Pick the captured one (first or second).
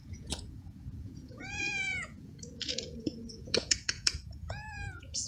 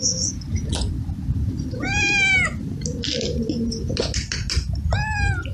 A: second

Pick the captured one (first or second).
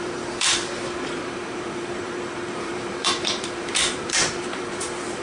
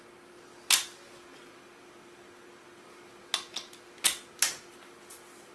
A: second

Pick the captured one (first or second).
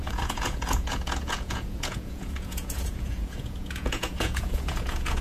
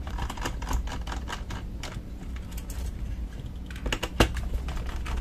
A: second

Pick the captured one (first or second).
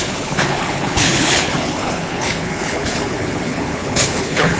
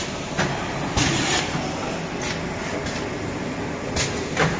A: second